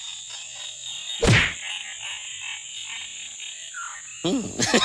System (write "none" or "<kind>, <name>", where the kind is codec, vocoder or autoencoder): none